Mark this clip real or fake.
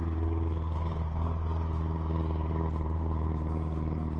fake